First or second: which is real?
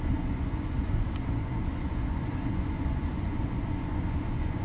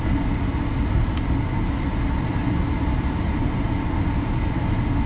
second